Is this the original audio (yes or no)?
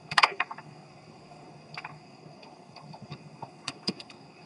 no